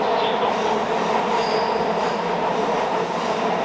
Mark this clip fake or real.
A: real